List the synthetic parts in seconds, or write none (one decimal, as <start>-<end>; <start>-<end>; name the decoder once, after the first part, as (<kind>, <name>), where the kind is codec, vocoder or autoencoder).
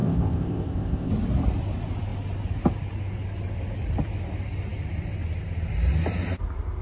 0.0-1.1 (codec, ZipCodec)